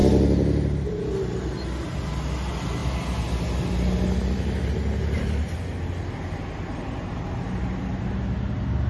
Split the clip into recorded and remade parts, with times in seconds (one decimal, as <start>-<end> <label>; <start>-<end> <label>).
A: 0.0-8.9 recorded